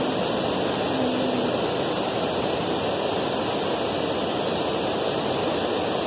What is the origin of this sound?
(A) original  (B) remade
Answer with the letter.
A